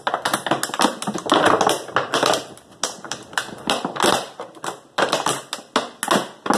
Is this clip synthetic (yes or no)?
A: no